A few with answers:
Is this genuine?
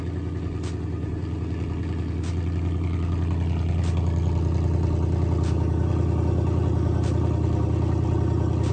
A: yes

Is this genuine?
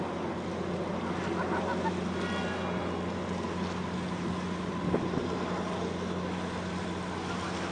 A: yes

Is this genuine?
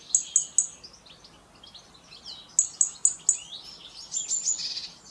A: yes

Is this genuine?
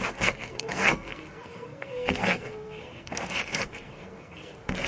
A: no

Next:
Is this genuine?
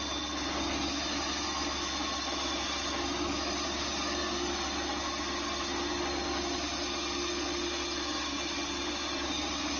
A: yes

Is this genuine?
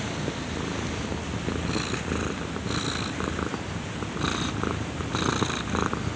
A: yes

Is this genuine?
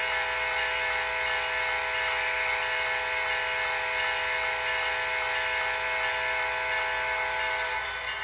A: yes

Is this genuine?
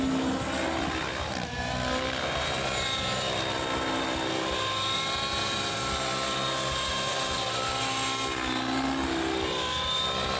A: yes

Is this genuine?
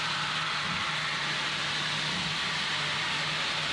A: yes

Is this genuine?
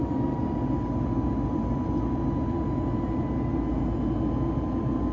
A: yes